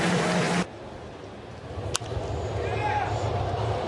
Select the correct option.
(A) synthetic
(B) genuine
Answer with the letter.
B